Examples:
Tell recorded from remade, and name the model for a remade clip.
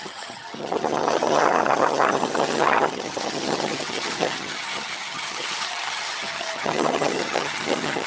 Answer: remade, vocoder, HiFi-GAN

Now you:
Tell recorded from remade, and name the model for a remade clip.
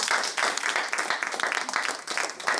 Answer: recorded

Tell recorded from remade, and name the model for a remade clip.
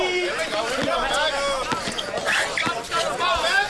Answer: recorded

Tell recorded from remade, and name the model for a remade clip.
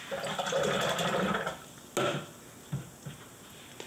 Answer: recorded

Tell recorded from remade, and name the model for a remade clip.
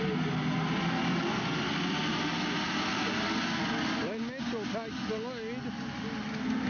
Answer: recorded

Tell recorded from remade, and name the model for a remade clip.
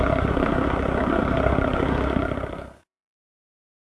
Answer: remade, codec, SNAC